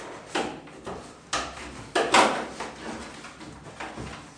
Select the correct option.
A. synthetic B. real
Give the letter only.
B